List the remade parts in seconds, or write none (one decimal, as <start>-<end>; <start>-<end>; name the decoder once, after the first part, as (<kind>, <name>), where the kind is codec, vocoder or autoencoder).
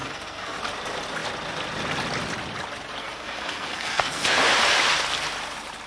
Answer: 0.0-0.6 (codec, SNAC); 3.0-4.4